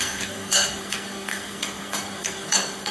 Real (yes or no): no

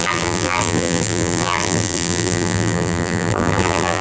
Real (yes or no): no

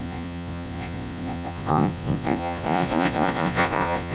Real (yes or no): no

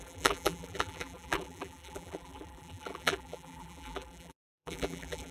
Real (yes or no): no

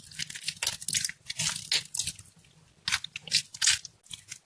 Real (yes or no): yes